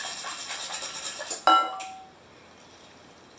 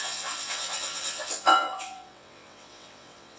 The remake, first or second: second